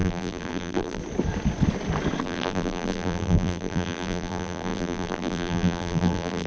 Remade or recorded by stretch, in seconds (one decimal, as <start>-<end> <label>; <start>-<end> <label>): 0.0-1.0 remade; 1.0-2.2 recorded; 2.2-6.5 remade